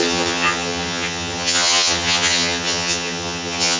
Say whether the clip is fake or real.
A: fake